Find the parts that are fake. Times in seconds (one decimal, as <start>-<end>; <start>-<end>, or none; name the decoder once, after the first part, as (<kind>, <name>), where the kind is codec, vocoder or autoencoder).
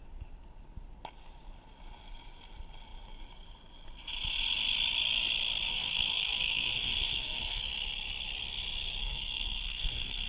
5.7-7.6 (codec, SNAC); 9.0-10.3